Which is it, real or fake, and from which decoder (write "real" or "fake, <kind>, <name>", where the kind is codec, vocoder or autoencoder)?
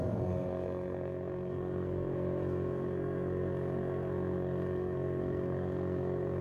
fake, codec, SNAC